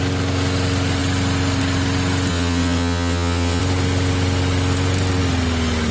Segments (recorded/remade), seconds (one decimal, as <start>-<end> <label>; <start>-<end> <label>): 0.0-2.3 recorded; 2.3-3.6 remade; 3.6-5.9 recorded